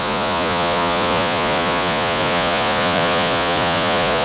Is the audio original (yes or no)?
no